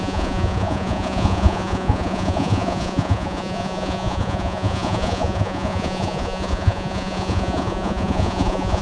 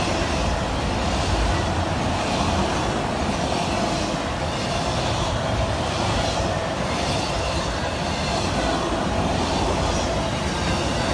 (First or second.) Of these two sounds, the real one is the second